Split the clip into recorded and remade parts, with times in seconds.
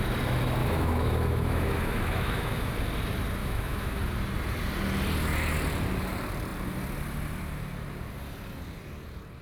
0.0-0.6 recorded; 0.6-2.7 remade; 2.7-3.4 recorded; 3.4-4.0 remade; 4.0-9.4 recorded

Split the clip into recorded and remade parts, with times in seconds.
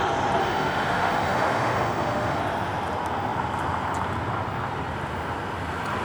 0.0-0.4 recorded; 0.4-2.4 remade; 2.4-6.0 recorded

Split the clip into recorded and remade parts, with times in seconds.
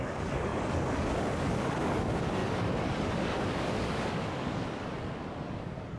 0.0-6.0 remade